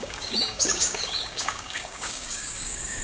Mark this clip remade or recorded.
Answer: remade